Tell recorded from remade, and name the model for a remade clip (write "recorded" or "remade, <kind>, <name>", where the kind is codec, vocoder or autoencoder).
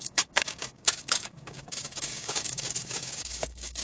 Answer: remade, codec, DAC